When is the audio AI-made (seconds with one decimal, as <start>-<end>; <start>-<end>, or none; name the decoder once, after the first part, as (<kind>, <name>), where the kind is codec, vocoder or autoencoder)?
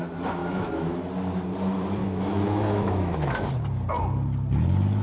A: 0.4-1.0 (autoencoder, DAC-VAE); 2.0-3.5